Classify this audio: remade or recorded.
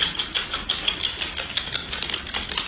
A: recorded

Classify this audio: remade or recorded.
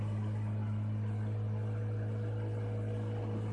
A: recorded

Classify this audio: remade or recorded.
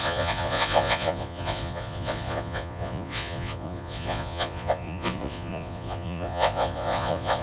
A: remade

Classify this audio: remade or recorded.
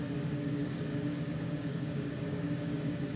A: remade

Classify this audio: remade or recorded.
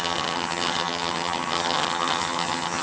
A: remade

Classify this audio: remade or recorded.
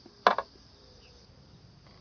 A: recorded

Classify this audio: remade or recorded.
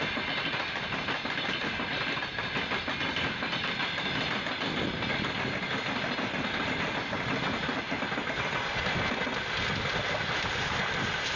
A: recorded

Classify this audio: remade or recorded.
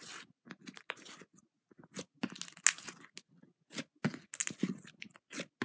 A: recorded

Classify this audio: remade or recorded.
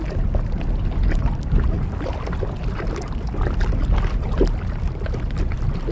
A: recorded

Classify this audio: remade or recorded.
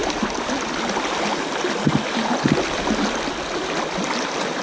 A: recorded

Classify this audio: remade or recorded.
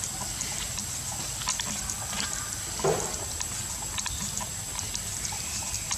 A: recorded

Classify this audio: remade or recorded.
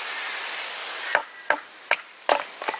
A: recorded